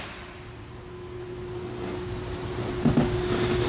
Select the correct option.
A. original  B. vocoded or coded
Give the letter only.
A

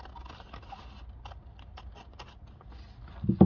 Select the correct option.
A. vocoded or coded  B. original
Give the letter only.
B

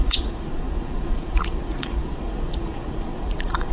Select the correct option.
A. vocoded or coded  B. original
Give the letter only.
A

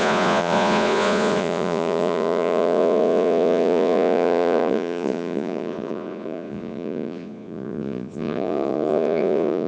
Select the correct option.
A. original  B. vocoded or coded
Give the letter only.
B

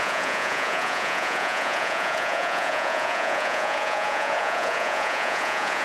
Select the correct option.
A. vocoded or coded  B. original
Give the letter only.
A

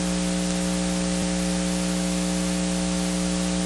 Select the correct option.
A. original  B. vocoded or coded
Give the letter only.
A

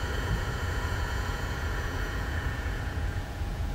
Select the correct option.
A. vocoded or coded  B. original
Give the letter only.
A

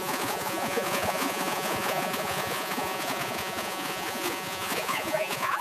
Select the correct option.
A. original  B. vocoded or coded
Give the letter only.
B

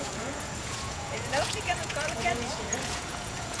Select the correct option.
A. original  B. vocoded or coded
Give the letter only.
B